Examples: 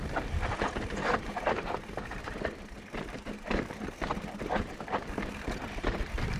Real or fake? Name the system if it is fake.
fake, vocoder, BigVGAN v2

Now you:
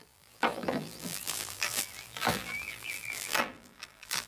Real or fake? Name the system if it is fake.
fake, vocoder, BigVGAN v2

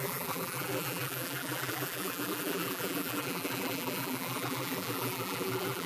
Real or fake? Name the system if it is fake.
fake, vocoder, BigVGAN v2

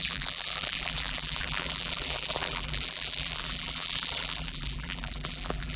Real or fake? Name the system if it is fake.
fake, vocoder, BigVGAN v2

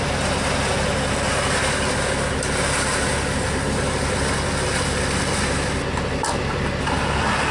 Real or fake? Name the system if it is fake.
real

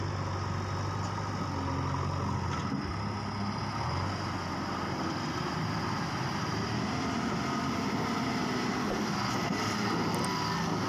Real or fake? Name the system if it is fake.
real